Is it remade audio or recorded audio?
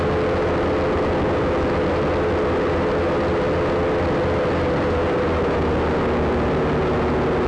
recorded